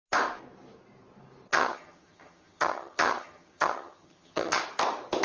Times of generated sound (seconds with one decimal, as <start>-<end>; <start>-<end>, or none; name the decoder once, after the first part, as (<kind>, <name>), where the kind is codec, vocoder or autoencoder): 1.5-4.6 (vocoder, HiFi-GAN)